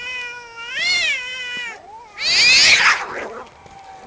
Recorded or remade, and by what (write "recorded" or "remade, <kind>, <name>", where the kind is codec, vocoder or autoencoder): recorded